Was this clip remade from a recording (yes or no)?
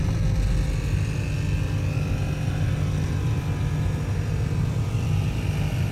no